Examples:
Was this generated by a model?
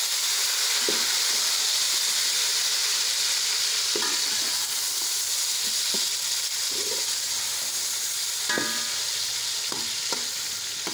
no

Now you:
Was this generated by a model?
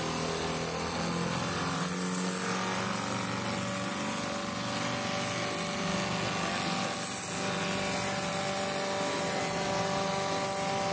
no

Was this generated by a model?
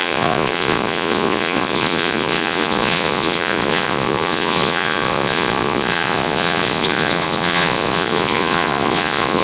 yes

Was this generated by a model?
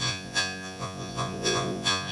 yes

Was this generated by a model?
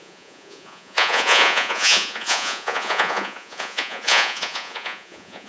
yes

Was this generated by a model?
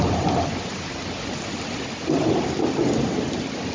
no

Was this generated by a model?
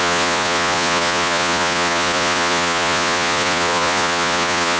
yes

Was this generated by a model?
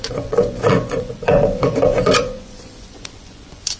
yes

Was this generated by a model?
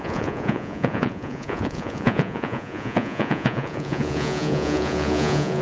yes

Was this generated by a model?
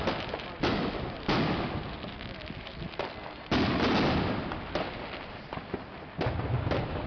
no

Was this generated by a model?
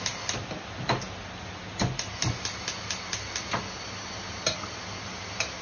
no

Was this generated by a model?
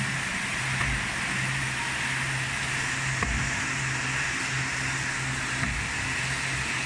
no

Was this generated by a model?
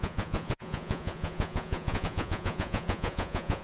yes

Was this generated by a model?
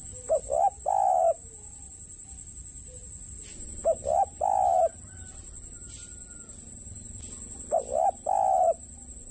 no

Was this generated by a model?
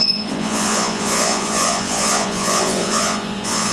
yes